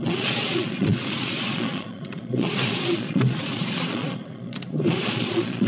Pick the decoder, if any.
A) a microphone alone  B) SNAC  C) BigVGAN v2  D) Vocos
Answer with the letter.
D